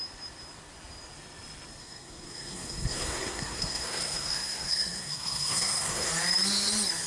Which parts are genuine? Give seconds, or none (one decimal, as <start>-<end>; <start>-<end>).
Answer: 0.0-1.8; 6.1-7.1